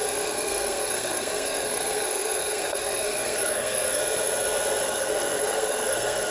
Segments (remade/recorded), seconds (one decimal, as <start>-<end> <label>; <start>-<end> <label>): 0.0-4.0 remade; 4.0-4.8 recorded; 4.8-6.3 remade